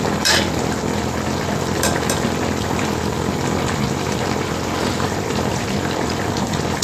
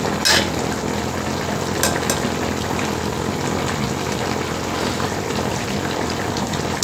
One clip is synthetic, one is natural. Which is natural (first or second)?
second